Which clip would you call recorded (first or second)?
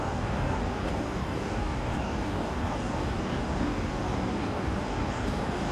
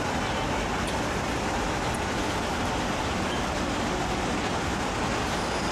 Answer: second